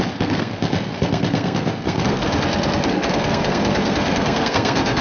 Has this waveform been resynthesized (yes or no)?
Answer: yes